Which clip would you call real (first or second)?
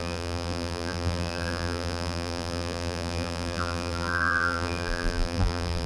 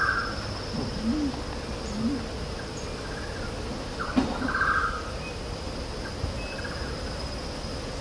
second